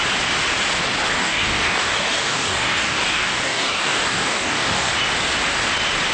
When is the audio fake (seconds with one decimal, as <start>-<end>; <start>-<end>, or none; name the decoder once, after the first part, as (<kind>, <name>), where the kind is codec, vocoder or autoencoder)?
1.2-4.9 (codec, DAC)